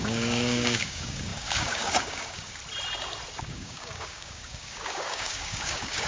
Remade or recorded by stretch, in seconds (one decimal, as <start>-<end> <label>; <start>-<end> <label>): 0.0-2.6 remade; 2.6-3.4 recorded; 3.4-6.1 remade